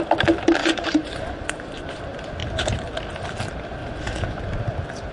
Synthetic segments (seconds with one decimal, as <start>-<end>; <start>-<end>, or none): 0.6-2.0; 3.8-4.4